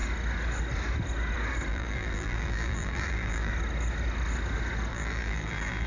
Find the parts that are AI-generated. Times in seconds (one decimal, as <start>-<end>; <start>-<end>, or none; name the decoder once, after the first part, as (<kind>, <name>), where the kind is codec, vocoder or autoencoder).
1.7-3.5 (vocoder, BigVGAN v2); 4.9-5.9

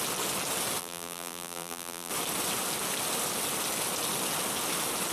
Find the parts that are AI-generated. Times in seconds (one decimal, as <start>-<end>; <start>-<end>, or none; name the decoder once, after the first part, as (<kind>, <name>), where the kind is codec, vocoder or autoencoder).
0.8-2.1 (vocoder, BigVGAN v2)

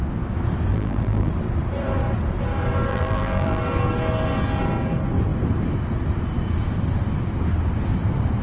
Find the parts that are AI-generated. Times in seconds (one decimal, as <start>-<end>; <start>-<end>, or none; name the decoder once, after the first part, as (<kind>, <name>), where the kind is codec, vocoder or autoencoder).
0.7-1.3 (vocoder, BigVGAN v2); 2.9-3.6

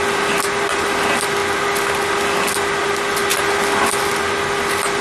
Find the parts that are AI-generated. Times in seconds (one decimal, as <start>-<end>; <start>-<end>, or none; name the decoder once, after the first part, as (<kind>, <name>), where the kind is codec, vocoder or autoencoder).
none

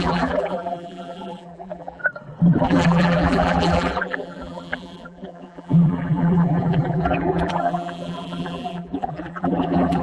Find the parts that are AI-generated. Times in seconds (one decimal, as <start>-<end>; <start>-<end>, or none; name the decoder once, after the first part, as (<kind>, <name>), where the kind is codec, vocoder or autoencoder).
0.0-2.0 (vocoder, BigVGAN v2); 2.6-10.0

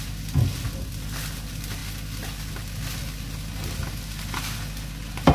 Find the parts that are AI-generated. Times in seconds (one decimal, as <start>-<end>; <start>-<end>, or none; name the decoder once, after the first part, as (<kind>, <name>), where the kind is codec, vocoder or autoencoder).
none

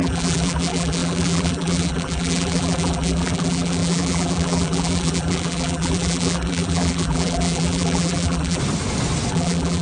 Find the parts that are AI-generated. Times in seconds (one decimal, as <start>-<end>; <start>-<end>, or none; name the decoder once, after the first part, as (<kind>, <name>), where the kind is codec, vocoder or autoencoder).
0.0-8.6 (vocoder, BigVGAN v2); 9.3-9.8

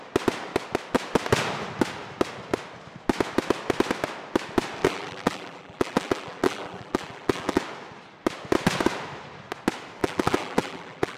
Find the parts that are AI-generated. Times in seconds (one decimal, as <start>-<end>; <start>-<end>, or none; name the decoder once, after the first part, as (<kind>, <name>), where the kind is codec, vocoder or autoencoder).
4.8-7.6 (vocoder, BigVGAN v2); 10.0-11.2